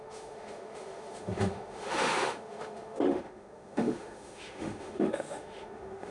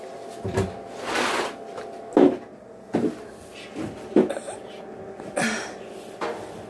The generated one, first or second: first